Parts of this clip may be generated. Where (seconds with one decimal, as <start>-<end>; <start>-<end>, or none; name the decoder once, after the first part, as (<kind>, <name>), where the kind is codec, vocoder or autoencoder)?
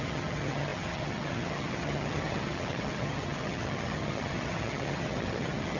0.0-5.8 (vocoder, HiFi-GAN)